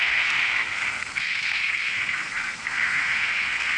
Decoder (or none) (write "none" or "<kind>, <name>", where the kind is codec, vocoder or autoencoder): codec, SNAC